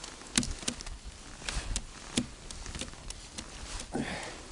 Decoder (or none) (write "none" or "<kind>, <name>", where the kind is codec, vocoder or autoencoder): none